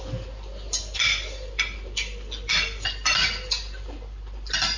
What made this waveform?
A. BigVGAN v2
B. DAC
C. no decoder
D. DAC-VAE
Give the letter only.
C